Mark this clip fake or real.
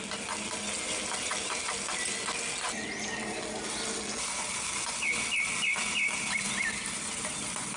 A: real